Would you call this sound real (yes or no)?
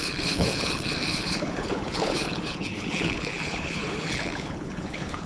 no